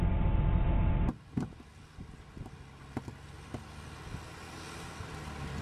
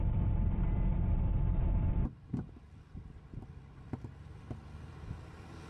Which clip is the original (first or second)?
first